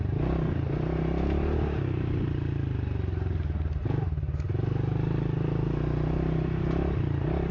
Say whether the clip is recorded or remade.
recorded